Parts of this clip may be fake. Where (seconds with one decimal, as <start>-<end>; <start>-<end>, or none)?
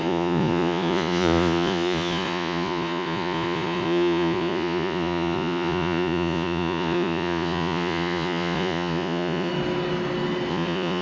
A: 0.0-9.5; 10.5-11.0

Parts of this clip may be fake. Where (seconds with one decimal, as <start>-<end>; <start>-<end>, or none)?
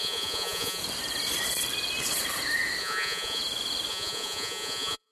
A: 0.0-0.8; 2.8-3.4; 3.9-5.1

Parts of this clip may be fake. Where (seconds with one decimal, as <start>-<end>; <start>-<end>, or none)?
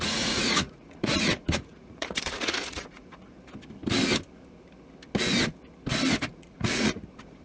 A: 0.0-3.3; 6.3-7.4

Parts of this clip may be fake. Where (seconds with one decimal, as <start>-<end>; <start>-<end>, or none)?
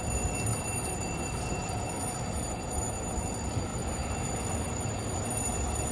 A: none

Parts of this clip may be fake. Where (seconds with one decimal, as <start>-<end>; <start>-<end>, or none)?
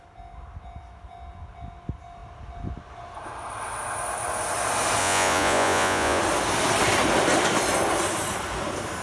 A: 5.0-6.2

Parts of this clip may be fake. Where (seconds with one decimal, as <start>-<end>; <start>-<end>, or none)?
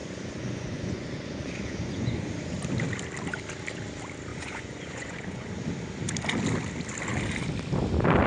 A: 0.0-2.3; 4.3-5.5